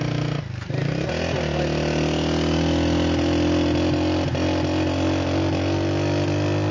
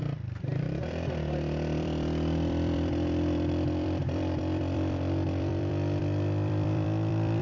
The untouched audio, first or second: first